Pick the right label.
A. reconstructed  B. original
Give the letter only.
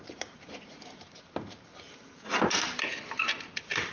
A